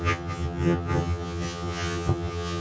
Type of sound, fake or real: fake